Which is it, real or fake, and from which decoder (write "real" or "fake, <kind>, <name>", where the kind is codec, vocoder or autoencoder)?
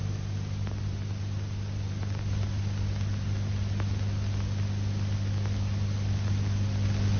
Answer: real